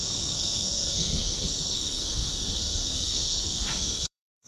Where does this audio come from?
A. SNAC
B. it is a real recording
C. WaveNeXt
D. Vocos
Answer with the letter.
A